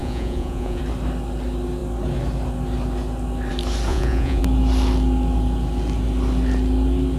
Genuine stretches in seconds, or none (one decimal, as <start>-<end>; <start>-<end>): 0.8-3.9; 4.4-7.2